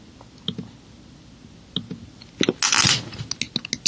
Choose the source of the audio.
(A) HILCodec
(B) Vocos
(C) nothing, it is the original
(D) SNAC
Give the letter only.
C